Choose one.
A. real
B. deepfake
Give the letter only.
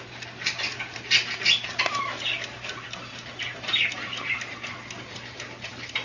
A